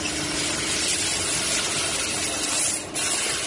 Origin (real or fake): real